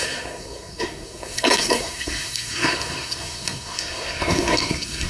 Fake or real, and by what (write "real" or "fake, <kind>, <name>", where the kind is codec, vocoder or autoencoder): fake, codec, SNAC